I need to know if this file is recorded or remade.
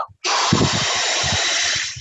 recorded